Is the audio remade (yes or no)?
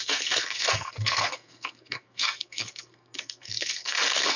yes